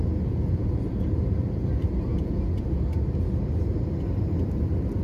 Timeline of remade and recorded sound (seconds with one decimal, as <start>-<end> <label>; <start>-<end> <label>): 0.0-0.8 remade; 0.8-2.1 recorded; 2.1-2.8 remade; 2.8-5.0 recorded

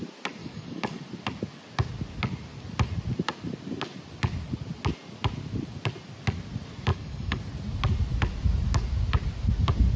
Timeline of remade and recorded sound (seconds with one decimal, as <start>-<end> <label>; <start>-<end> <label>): 0.0-0.4 recorded; 0.4-1.0 remade; 1.0-6.9 recorded; 6.9-7.4 remade; 7.4-10.0 recorded

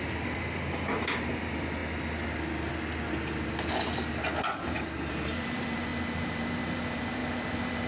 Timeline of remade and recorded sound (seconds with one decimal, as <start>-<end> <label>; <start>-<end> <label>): 0.0-1.8 remade; 1.8-4.4 recorded; 4.4-7.9 remade

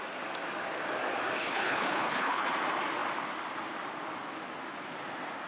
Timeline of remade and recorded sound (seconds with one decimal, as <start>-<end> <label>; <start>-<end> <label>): 0.0-1.4 recorded; 1.4-2.5 remade; 2.5-5.5 recorded

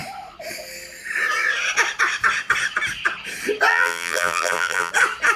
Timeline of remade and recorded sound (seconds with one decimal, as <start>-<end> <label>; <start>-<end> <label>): 0.0-3.7 recorded; 3.7-4.9 remade; 4.9-5.4 recorded